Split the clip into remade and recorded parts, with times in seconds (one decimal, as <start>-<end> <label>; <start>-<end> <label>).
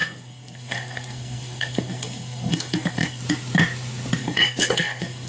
0.0-3.2 remade; 3.2-4.2 recorded; 4.2-5.3 remade